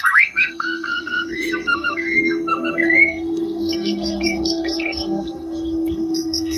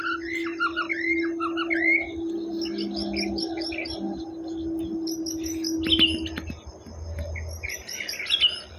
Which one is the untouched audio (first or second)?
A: second